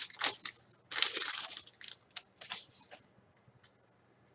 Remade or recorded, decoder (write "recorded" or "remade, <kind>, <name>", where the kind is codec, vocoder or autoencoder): recorded